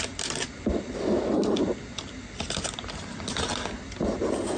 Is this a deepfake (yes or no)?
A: no